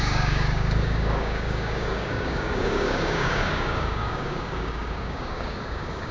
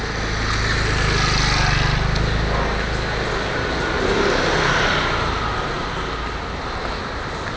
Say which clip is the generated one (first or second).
first